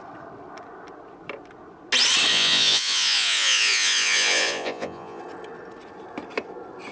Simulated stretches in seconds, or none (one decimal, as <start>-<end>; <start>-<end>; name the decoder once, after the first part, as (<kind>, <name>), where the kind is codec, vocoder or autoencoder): 2.3-5.2 (vocoder, Vocos)